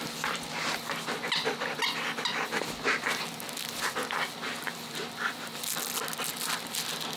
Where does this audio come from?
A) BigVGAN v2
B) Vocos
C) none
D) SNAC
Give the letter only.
C